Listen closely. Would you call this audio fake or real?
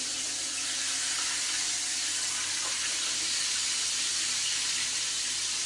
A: real